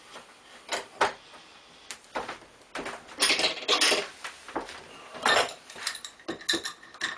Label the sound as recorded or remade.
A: recorded